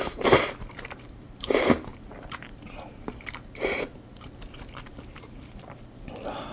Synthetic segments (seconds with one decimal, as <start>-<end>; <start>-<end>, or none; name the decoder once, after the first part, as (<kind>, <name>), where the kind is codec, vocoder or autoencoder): 0.0-6.5 (vocoder, BigVGAN v2)